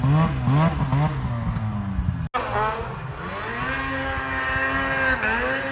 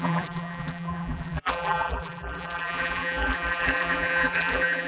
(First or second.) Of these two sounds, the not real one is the second